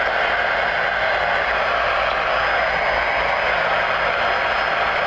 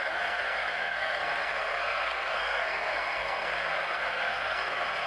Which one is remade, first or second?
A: second